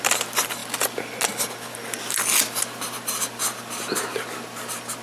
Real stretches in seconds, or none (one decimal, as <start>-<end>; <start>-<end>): 0.0-5.0